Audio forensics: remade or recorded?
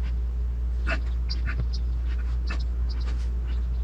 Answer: recorded